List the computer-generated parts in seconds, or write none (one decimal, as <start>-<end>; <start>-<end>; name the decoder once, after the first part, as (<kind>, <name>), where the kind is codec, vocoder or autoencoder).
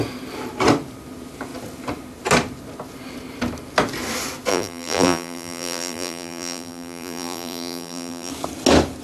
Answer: 4.5-8.3 (vocoder, BigVGAN v2)